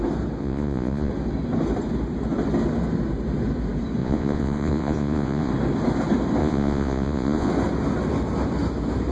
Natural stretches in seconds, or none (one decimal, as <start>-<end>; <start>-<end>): 0.0-0.4; 1.1-4.0; 5.5-6.4; 7.5-9.1